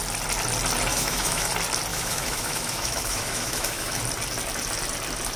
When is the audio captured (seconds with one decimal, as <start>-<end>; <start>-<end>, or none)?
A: 0.0-0.9; 1.5-1.9; 4.0-5.4